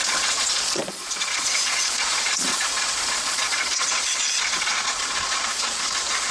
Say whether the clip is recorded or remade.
remade